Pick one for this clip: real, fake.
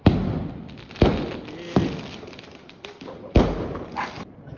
real